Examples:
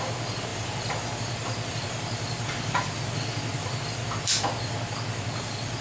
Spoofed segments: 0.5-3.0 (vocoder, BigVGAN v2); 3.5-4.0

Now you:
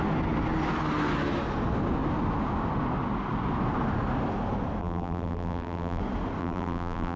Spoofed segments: 4.8-6.0 (vocoder, BigVGAN v2); 6.4-7.2

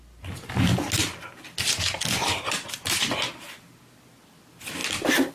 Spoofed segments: none

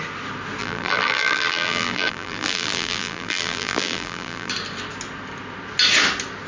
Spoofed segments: 0.6-4.5 (vocoder, BigVGAN v2)